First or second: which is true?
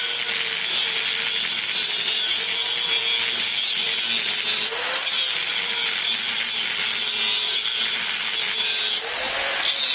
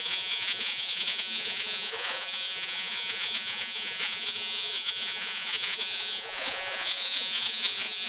first